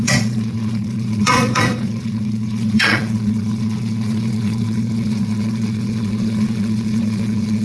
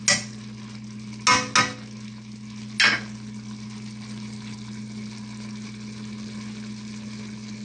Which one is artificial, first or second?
first